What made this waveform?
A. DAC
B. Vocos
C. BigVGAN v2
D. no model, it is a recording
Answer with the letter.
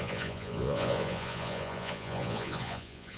B